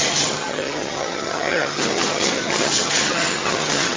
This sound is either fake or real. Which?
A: fake